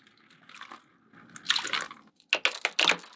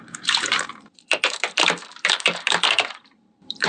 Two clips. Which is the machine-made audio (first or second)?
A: second